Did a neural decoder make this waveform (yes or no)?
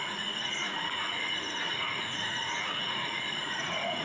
yes